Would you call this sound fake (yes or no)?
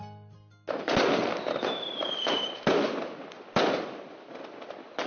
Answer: no